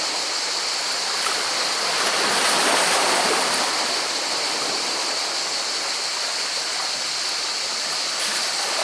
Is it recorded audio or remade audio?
recorded